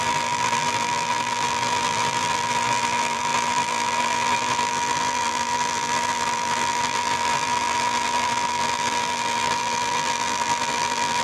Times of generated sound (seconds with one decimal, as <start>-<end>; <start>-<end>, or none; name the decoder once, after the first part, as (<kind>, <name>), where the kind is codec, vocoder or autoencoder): 0.0-11.2 (vocoder, BigVGAN v2)